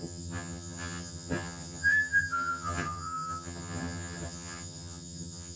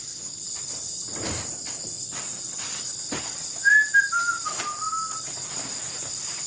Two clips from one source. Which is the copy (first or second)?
first